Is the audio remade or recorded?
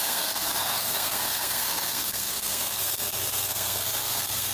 remade